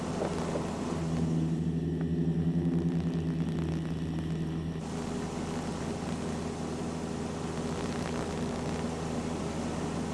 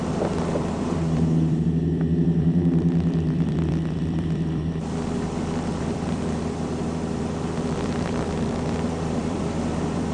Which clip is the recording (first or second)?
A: first